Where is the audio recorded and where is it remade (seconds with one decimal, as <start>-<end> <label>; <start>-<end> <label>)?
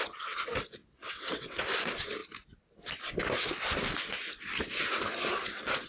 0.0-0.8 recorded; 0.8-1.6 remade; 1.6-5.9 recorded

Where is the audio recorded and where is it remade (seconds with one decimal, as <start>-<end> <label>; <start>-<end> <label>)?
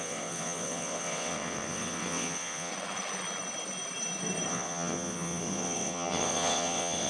0.0-2.7 remade; 2.7-4.5 recorded; 4.5-7.1 remade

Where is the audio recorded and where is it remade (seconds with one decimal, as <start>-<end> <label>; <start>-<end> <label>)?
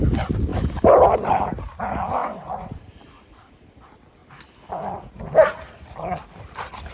0.0-2.2 recorded; 2.2-2.8 remade; 2.8-6.9 recorded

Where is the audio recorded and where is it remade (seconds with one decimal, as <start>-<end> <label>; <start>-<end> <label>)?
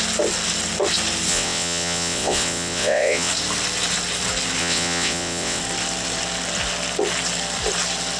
0.0-1.3 recorded; 1.3-3.3 remade; 3.3-4.6 recorded; 4.6-5.6 remade; 5.6-8.2 recorded